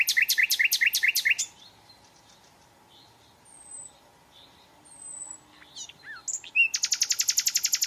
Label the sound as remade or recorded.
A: recorded